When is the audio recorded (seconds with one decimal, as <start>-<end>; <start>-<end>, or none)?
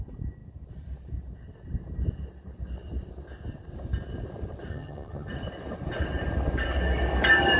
0.0-4.7; 5.3-7.6